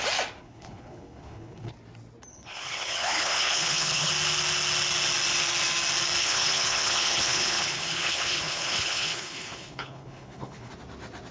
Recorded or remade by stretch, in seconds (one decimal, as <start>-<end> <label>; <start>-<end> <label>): 0.0-0.4 recorded; 0.4-1.7 remade; 1.7-2.3 recorded; 2.3-4.1 remade; 4.1-6.2 recorded; 6.2-10.7 remade; 10.7-11.3 recorded